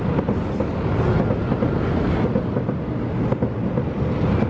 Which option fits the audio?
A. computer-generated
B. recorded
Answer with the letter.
B